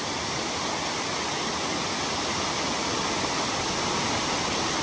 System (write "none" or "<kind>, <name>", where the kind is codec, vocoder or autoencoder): vocoder, BigVGAN v2